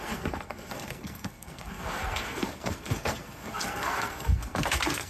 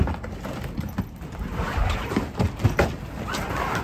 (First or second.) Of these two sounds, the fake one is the first